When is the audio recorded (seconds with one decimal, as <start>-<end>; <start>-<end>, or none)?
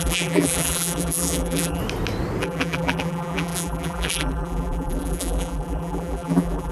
1.8-2.4